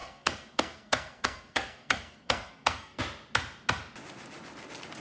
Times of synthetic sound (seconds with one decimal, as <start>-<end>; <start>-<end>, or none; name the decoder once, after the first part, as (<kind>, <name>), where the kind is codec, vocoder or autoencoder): 0.0-3.0 (codec, SNAC)